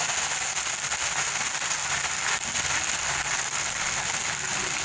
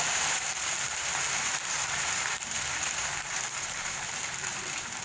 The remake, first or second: second